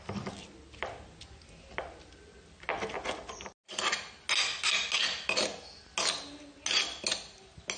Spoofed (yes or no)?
no